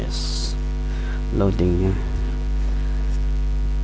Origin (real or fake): real